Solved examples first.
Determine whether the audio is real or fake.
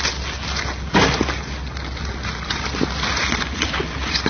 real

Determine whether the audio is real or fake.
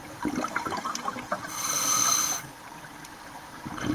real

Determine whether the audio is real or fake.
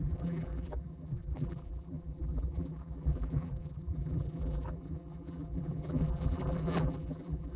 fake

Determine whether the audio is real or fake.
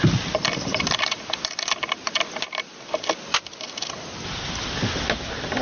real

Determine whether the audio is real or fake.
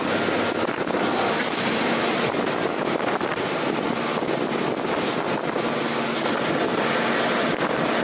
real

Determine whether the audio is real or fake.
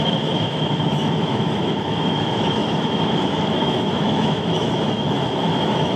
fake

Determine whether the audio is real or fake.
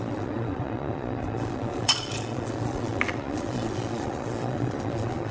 fake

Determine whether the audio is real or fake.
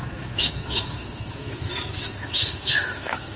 fake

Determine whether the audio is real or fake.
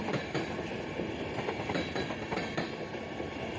fake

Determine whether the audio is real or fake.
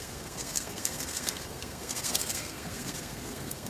fake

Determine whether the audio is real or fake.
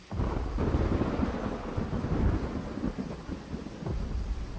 real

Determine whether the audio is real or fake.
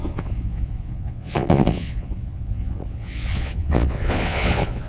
fake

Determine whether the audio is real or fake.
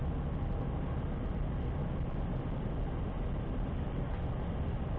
real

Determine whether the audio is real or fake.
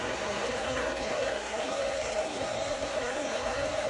fake